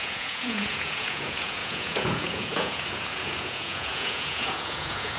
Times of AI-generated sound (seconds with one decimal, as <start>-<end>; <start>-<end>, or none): 0.0-5.2